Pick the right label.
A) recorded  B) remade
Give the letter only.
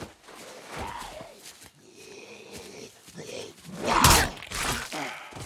A